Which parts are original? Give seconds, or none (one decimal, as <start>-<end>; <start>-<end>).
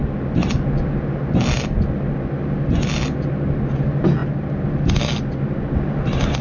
0.0-6.4